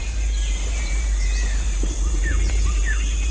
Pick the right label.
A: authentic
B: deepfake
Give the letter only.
B